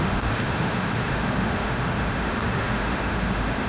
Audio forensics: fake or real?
fake